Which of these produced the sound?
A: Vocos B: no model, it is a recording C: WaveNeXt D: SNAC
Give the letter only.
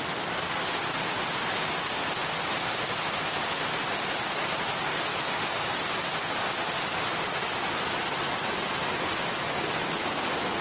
B